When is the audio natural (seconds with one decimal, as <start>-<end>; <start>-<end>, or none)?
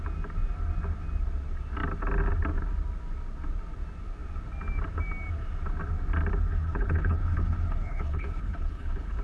0.0-6.5